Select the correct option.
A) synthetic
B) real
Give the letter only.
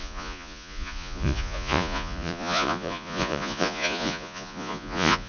A